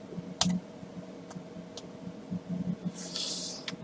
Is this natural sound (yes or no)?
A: yes